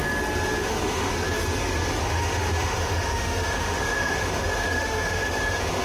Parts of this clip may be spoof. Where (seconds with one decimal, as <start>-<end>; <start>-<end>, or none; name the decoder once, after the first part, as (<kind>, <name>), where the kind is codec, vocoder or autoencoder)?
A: 0.6-1.1 (autoencoder, DAC-VAE); 2.0-5.8